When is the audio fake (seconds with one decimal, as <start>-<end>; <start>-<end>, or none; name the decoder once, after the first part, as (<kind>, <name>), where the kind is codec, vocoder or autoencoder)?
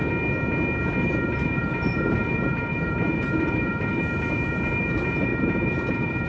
1.0-6.3 (vocoder, BigVGAN v2)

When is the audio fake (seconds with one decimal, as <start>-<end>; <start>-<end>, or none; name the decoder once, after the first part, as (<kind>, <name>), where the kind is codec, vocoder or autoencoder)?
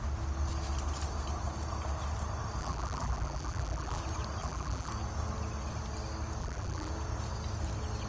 2.6-4.0 (vocoder, BigVGAN v2); 4.4-4.9; 6.4-6.9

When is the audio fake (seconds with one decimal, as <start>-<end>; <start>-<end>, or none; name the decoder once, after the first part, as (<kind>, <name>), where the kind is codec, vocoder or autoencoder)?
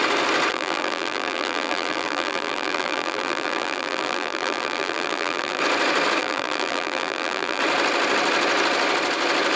0.5-5.6 (vocoder, BigVGAN v2); 6.2-7.6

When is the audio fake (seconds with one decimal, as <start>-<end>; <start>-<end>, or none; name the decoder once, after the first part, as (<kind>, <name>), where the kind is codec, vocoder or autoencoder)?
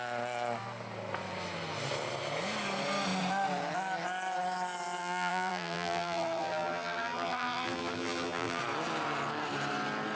5.0-8.6 (vocoder, BigVGAN v2)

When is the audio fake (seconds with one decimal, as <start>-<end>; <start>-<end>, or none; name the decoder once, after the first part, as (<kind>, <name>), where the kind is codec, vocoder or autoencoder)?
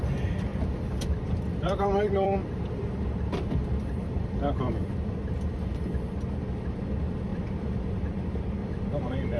0.5-4.7 (vocoder, BigVGAN v2); 7.3-8.1; 8.6-9.4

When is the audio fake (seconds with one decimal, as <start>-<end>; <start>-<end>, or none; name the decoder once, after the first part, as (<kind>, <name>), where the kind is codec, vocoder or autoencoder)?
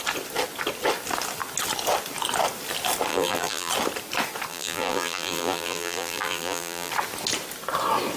3.1-3.7 (vocoder, BigVGAN v2); 4.5-6.9